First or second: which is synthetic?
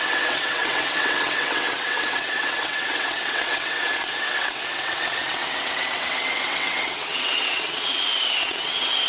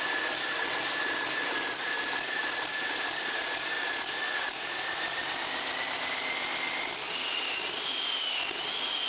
first